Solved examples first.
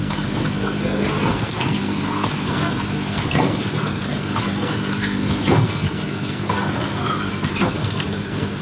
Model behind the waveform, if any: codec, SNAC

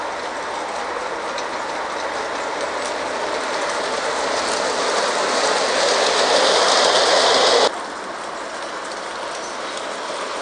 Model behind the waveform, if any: none